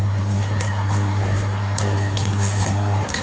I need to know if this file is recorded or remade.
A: remade